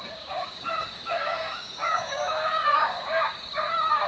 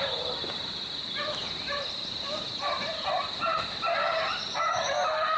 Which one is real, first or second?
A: second